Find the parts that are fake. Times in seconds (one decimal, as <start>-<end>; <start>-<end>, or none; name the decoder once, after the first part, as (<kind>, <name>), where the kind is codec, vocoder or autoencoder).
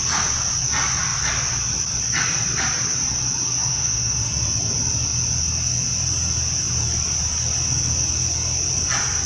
3.7-4.3 (autoencoder, DAC-VAE)